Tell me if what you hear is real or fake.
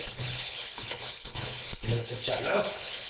fake